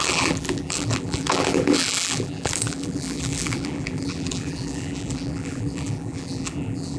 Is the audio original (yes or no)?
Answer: no